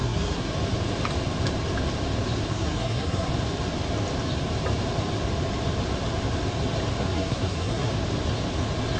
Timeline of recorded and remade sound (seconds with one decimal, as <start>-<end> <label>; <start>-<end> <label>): 0.0-0.5 remade; 0.5-2.5 recorded; 2.5-3.3 remade; 3.3-7.0 recorded; 7.0-7.9 remade; 7.9-9.0 recorded